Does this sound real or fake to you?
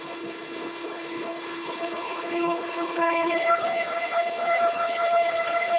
fake